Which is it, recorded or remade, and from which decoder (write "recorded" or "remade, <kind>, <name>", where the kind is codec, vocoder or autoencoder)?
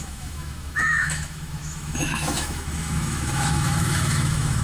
remade, autoencoder, DAC-VAE